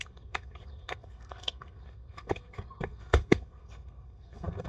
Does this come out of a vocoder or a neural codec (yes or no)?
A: yes